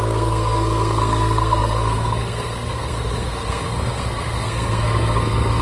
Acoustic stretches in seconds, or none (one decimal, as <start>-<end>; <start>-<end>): none